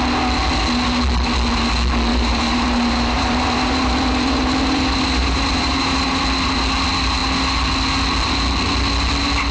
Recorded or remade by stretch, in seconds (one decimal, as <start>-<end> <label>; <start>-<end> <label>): 0.0-2.1 recorded; 2.1-6.2 remade; 6.2-9.5 recorded